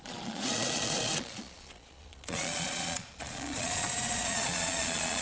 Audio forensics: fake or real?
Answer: fake